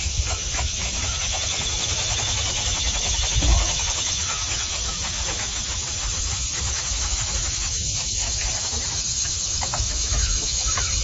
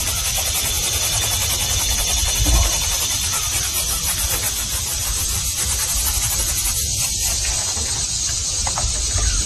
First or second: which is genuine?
second